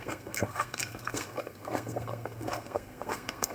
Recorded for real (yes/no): no